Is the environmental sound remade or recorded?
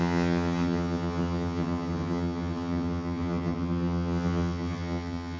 remade